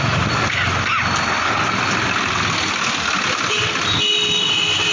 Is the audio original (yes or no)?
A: yes